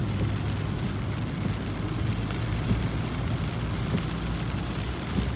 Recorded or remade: recorded